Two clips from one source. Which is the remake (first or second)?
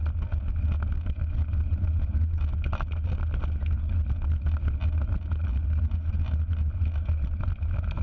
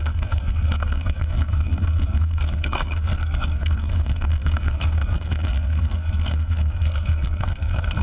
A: second